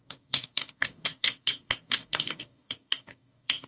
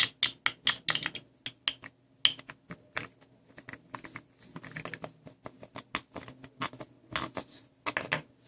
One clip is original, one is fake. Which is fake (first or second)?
first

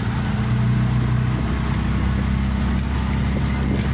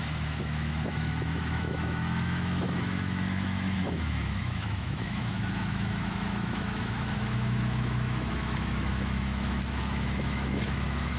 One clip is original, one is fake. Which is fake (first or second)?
second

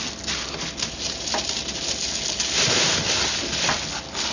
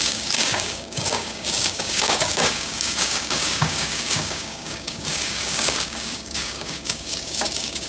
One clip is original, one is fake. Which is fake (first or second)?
second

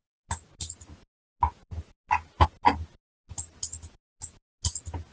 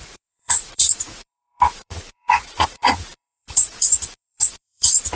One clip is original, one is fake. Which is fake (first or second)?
second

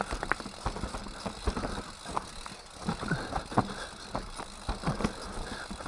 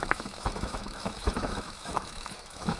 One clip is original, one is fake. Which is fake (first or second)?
second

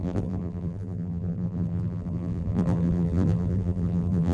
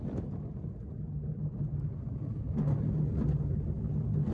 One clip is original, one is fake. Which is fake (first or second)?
first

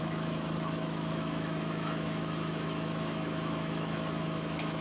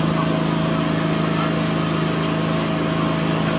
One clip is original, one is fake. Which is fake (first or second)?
first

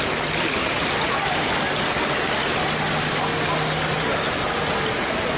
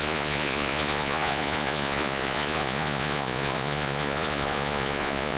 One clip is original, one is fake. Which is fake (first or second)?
second